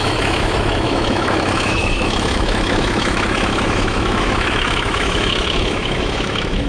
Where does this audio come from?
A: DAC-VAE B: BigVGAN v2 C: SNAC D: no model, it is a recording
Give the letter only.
A